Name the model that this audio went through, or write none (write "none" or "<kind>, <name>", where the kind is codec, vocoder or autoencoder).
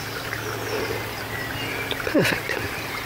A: none